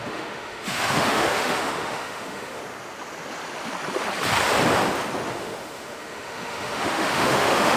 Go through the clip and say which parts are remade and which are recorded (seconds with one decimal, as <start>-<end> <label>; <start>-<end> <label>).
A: 0.0-2.6 remade; 2.6-5.3 recorded; 5.3-7.8 remade

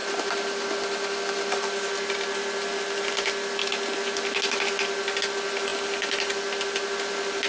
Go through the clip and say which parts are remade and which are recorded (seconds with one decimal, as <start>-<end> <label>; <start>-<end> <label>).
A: 0.0-7.5 recorded

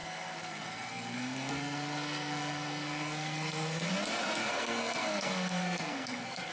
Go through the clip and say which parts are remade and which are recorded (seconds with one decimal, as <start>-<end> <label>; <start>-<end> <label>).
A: 0.0-3.9 remade; 3.9-4.4 recorded; 4.4-6.5 remade